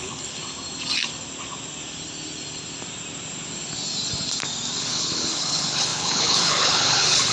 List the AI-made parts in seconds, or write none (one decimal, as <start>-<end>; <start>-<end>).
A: 0.0-0.4; 4.8-7.3